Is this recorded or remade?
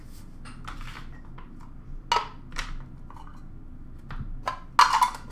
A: recorded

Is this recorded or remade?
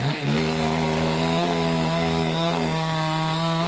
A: remade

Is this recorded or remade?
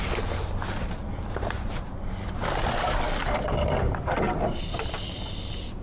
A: recorded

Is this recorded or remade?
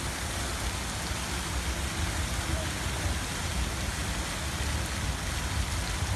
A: recorded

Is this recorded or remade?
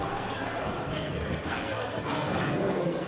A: remade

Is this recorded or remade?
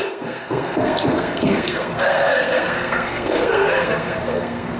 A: remade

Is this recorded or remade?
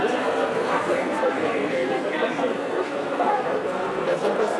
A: remade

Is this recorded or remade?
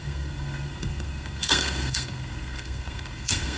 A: remade